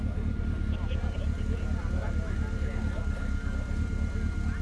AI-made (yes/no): no